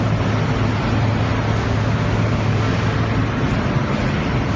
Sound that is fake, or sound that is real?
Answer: real